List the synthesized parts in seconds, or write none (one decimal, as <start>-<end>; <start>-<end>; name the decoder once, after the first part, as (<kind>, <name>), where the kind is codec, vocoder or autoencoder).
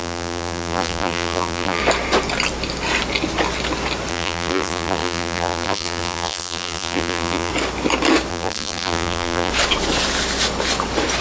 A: 0.0-1.8 (vocoder, BigVGAN v2); 4.1-7.5; 8.3-9.5